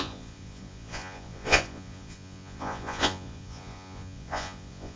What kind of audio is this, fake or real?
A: fake